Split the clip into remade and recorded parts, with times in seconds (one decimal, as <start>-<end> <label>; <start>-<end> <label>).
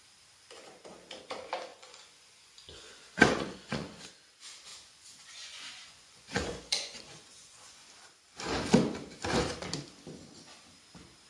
0.0-1.7 recorded; 1.7-4.0 remade; 4.0-4.7 recorded; 4.7-7.9 remade; 7.9-11.3 recorded